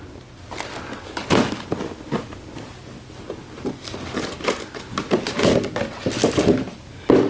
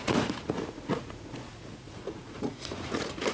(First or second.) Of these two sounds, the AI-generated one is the second